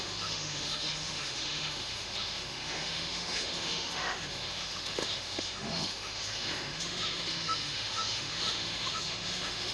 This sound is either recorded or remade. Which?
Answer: remade